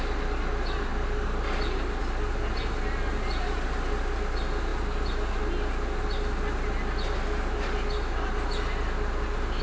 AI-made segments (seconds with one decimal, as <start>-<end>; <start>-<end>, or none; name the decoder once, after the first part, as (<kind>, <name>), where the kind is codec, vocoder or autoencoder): none